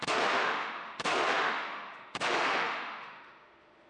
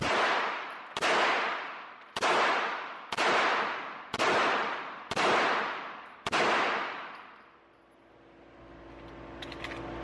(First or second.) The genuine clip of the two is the second